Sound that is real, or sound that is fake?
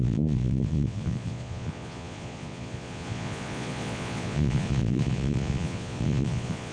fake